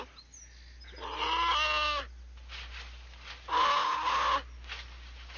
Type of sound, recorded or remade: recorded